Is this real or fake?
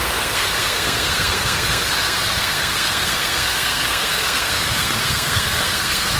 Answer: fake